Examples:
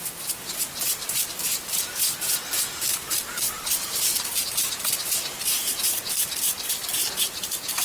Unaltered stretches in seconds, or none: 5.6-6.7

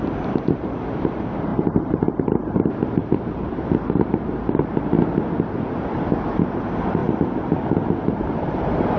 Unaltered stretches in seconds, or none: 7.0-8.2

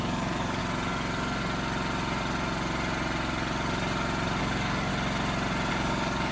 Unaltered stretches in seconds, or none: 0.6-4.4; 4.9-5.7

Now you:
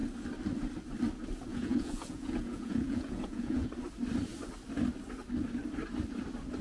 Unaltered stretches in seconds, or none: 0.0-1.5; 3.7-6.6

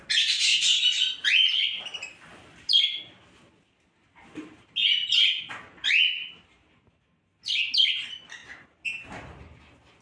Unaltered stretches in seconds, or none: 0.0-10.0